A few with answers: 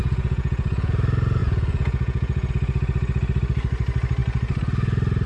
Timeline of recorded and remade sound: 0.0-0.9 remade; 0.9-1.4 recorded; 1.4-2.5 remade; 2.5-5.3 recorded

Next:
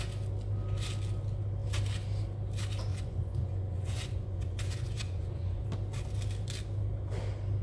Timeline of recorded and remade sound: 0.0-2.9 recorded; 2.9-5.6 remade; 5.6-7.6 recorded

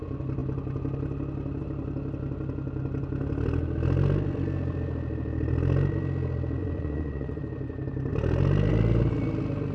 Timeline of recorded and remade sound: 0.0-6.6 recorded; 6.6-7.4 remade; 7.4-9.7 recorded

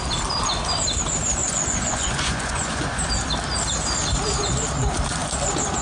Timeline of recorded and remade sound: 0.0-1.4 recorded; 1.4-3.0 remade; 3.0-5.8 recorded